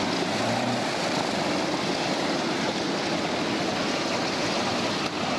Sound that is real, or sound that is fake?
real